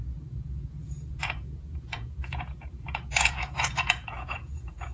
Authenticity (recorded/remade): remade